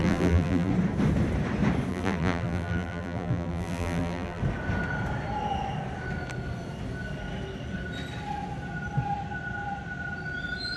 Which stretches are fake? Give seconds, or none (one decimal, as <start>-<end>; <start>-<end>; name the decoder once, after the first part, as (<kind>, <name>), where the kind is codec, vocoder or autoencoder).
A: 0.0-0.7 (vocoder, BigVGAN v2); 1.9-4.4